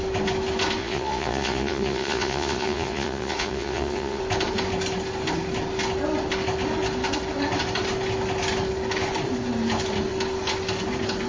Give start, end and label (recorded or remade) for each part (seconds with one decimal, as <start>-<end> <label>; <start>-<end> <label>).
0.0-0.8 recorded; 0.8-4.2 remade; 4.2-11.3 recorded